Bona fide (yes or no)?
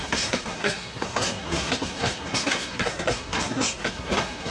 no